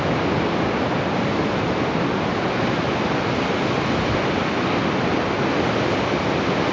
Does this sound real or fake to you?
real